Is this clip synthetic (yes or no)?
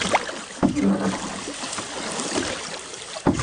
no